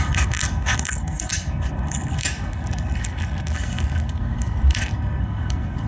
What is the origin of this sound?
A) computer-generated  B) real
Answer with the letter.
A